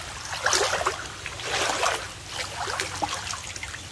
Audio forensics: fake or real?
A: real